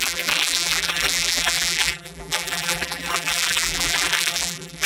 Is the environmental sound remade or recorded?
remade